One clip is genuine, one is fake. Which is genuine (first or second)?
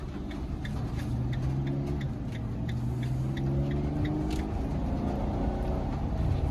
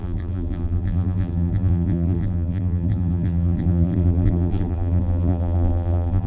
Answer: first